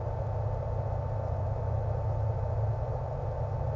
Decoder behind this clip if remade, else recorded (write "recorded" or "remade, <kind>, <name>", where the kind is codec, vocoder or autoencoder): recorded